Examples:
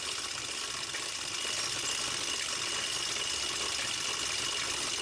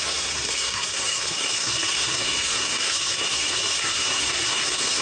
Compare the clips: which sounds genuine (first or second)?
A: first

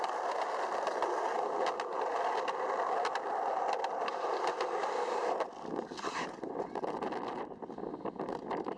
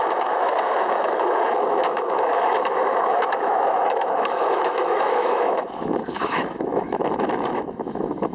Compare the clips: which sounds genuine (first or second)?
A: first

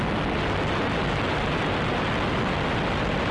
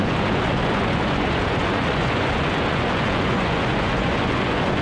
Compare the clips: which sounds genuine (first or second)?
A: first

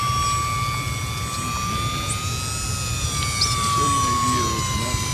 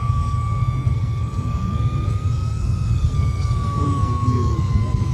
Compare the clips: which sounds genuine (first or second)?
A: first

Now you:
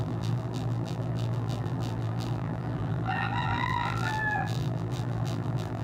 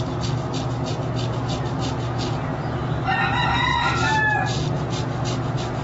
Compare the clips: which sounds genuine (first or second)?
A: second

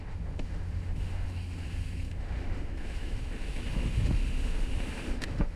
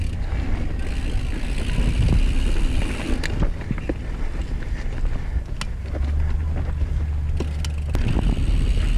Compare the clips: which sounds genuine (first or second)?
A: second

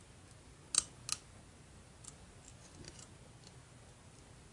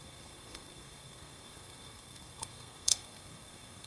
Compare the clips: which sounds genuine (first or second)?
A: first